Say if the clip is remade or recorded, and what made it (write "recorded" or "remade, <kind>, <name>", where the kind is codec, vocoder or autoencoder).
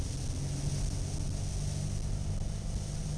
recorded